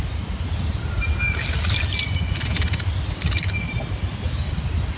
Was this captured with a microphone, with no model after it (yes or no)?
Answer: yes